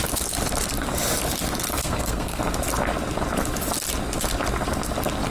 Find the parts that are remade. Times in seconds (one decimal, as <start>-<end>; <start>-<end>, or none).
1.8-2.4